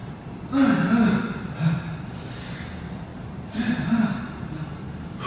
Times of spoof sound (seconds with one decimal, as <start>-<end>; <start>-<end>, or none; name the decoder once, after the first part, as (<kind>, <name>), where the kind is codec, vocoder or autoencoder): 1.2-5.3 (vocoder, BigVGAN v2)